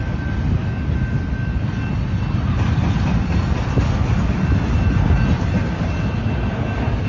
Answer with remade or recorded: recorded